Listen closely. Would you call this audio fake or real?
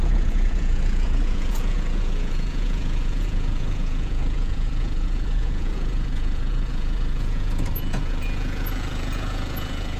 fake